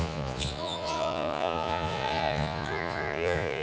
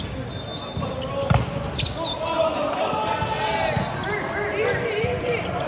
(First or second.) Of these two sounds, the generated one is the first